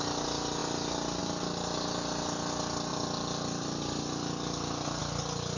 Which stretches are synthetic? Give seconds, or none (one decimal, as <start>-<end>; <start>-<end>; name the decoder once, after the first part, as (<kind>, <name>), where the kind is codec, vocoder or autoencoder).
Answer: none